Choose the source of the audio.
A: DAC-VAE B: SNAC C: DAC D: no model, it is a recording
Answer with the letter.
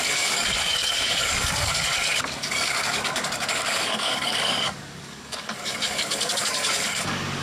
C